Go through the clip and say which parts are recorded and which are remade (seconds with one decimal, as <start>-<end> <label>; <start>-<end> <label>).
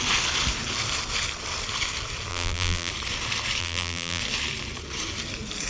0.0-2.3 recorded; 2.3-2.9 remade; 2.9-3.6 recorded; 3.6-4.2 remade; 4.2-5.7 recorded